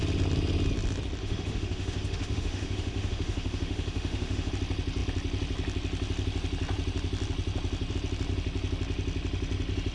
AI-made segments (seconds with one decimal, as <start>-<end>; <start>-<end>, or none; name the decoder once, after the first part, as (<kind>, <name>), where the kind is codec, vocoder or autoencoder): 1.2-4.5 (autoencoder, DAC-VAE)

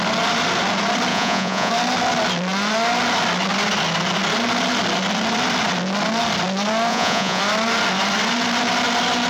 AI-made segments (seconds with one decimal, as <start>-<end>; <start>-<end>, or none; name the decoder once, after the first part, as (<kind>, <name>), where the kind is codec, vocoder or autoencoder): 1.1-1.7 (vocoder, Vocos); 6.9-7.4

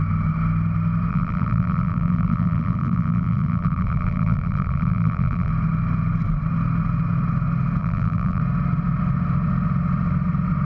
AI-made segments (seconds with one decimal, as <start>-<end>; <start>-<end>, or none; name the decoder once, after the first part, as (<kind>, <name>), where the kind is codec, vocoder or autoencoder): 1.1-5.5 (vocoder, BigVGAN v2); 7.8-8.4

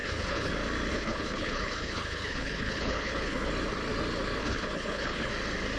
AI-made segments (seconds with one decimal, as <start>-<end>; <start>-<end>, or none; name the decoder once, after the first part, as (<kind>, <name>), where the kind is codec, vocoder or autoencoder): 0.0-0.5 (codec, HILCodec); 0.9-3.5; 4.4-5.3

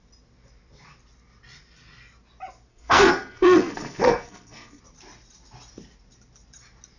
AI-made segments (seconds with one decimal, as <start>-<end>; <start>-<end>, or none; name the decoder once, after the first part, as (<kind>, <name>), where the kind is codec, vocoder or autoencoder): 2.7-4.8 (codec, SNAC)

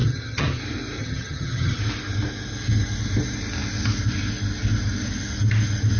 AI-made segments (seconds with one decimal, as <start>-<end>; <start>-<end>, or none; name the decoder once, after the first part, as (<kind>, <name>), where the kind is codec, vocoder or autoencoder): 0.0-0.6 (vocoder, HiFi-GAN); 1.0-1.8

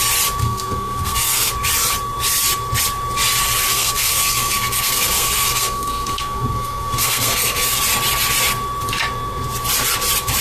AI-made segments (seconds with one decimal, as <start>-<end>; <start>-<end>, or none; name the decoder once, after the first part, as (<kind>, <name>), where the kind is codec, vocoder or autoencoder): 0.4-1.5 (codec, SNAC); 3.7-7.8